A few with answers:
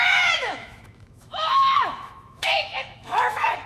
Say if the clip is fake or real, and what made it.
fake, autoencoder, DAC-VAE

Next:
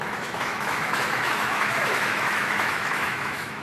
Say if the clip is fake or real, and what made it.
fake, autoencoder, DAC-VAE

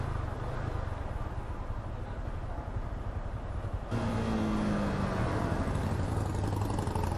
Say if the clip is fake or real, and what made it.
real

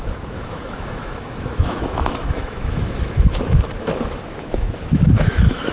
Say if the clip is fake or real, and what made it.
fake, autoencoder, DAC-VAE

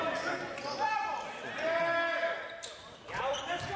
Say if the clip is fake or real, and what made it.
real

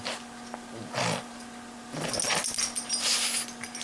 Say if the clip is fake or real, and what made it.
real